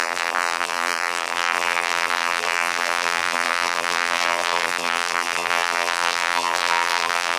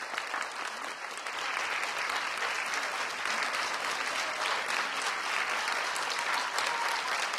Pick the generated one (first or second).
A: first